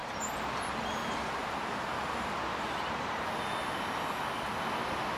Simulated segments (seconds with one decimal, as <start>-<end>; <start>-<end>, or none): 0.0-0.9; 1.4-3.2